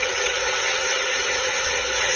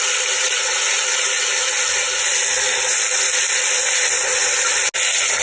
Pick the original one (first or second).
second